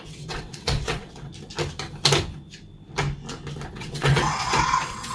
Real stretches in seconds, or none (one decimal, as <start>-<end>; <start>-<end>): 1.3-3.7